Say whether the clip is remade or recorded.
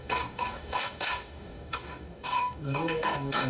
remade